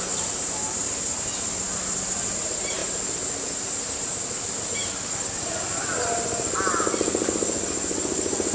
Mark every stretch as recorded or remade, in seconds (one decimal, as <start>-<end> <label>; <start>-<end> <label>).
0.0-8.5 recorded